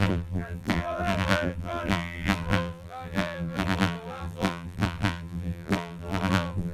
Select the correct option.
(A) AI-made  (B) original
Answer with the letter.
A